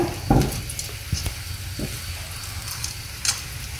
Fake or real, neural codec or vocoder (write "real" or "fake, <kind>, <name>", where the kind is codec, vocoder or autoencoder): real